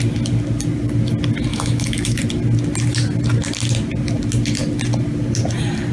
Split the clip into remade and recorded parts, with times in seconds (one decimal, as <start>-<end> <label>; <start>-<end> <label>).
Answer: 0.0-1.5 recorded; 1.5-2.2 remade; 2.2-5.9 recorded